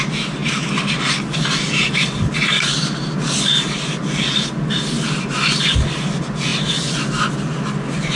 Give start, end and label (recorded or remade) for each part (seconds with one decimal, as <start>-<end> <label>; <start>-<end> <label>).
0.0-8.2 recorded

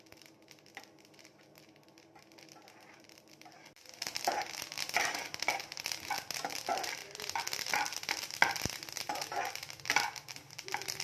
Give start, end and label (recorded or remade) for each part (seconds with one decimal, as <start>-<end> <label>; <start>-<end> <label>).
0.0-11.0 recorded

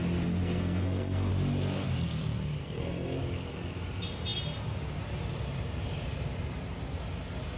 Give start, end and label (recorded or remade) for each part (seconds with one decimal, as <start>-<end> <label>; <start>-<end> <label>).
0.0-0.4 recorded; 0.4-1.3 remade; 1.3-2.6 recorded; 2.6-3.2 remade; 3.2-7.6 recorded

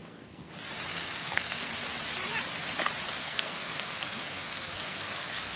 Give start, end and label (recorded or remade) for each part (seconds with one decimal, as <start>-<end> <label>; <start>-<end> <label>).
0.0-0.5 remade; 0.5-0.9 recorded; 0.9-1.7 remade; 1.7-3.2 recorded; 3.2-5.6 remade

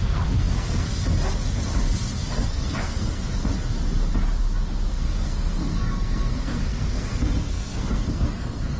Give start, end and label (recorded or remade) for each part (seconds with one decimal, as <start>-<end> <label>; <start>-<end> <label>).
0.0-0.9 remade; 0.9-2.3 recorded; 2.3-3.5 remade; 3.5-4.9 recorded; 4.9-8.8 remade

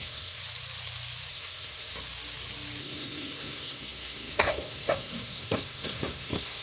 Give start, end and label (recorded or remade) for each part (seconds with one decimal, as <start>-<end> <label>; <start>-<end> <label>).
0.0-0.4 remade; 0.4-1.3 recorded; 1.3-1.9 remade; 1.9-2.8 recorded; 2.8-6.6 remade